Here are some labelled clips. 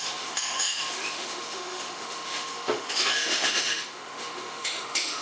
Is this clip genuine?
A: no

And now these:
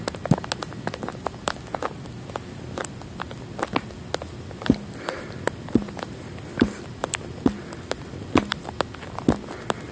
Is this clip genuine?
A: yes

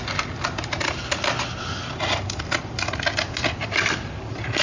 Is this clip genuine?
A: yes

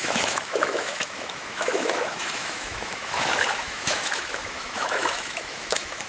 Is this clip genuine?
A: no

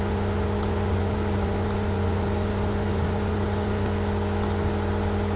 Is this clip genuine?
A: yes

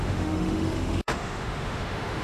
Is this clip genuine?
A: no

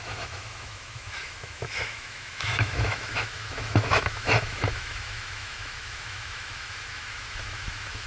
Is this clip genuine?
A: no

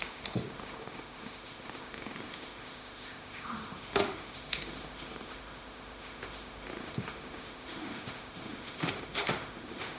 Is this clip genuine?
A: no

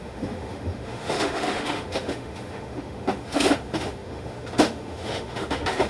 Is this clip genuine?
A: no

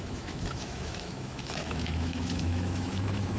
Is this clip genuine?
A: no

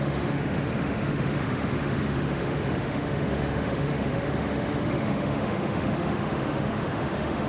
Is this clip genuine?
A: no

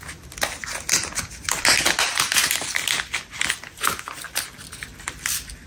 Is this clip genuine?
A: yes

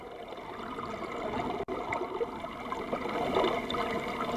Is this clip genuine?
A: yes